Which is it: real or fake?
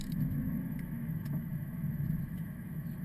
fake